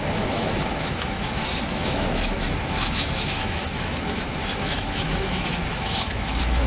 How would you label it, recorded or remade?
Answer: remade